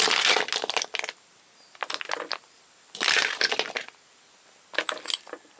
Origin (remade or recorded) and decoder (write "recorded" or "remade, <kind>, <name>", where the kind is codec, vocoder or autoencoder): recorded